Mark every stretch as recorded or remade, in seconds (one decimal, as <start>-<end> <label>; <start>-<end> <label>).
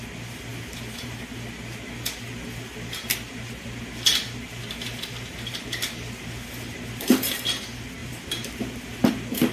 0.0-8.0 recorded; 8.0-9.1 remade; 9.1-9.5 recorded